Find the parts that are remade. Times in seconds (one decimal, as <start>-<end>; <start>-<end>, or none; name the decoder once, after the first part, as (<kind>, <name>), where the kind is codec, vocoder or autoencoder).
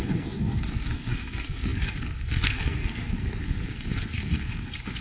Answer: 0.0-5.0 (codec, SNAC)